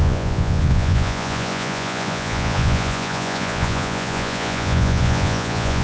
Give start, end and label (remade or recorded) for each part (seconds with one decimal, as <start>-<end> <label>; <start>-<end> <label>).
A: 0.0-5.8 remade